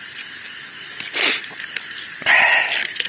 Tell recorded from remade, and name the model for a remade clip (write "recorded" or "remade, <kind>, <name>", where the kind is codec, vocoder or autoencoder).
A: recorded